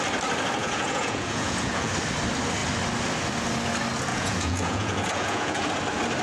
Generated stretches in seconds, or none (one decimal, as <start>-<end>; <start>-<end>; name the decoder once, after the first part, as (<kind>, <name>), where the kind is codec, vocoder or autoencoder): 0.6-1.9 (vocoder, Vocos); 4.1-5.7